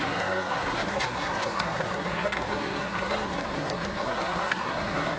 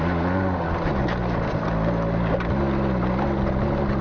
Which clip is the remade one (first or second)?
first